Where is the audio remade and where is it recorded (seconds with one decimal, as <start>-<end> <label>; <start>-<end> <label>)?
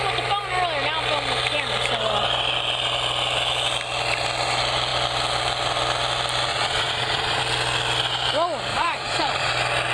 0.0-6.5 recorded; 6.5-7.4 remade; 7.4-8.7 recorded; 8.7-9.5 remade; 9.5-9.9 recorded